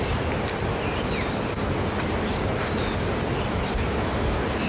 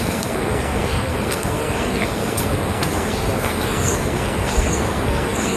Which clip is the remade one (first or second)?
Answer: second